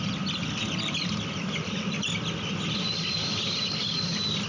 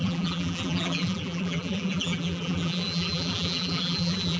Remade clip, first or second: second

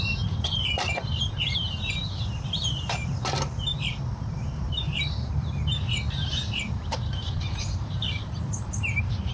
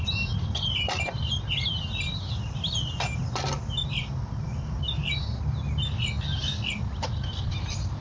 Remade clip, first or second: first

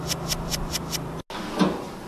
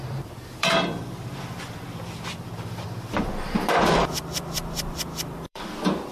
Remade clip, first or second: second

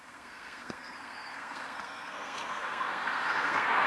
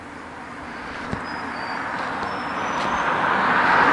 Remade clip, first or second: first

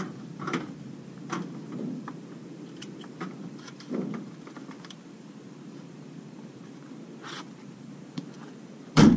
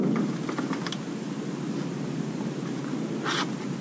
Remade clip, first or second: first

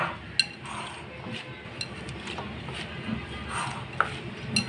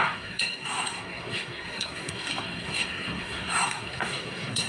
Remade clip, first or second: second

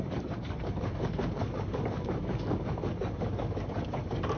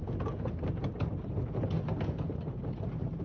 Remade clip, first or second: first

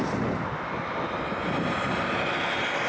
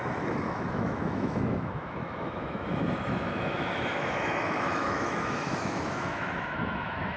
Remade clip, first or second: second